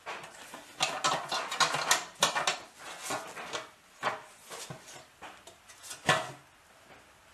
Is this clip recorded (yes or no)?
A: yes